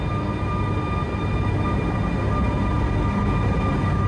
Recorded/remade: recorded